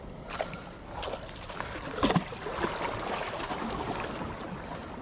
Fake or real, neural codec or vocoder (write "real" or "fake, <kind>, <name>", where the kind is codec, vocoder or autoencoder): real